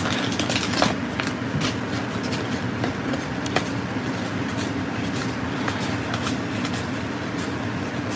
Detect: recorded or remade recorded